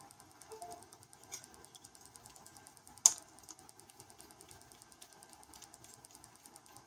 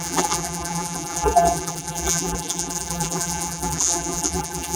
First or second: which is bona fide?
first